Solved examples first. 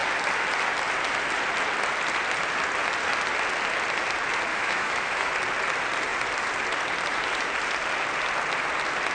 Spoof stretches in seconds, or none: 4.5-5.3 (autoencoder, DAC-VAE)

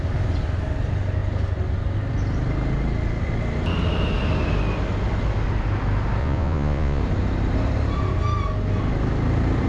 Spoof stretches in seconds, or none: 6.2-7.0 (vocoder, Vocos)

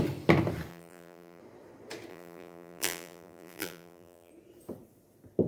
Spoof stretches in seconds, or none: 0.7-1.4 (vocoder, BigVGAN v2); 2.1-4.3